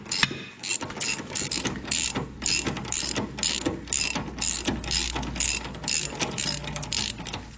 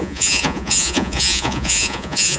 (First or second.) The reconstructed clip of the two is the second